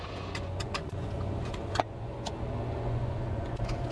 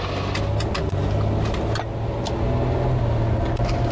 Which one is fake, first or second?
first